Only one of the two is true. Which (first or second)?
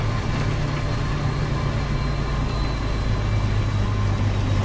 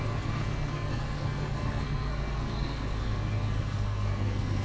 first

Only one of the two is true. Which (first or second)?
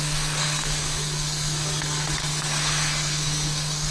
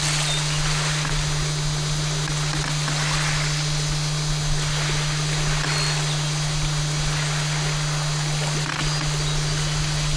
second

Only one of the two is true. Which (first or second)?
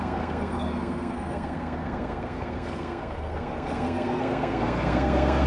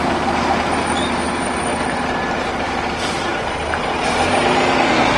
second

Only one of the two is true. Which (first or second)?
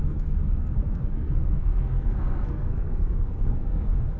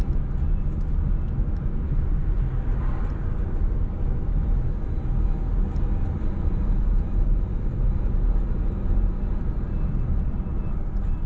second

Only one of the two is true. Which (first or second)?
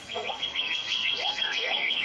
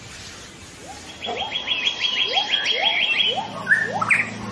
second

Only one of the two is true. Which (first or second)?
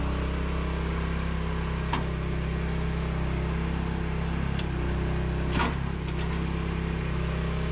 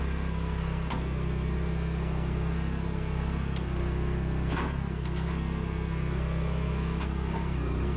first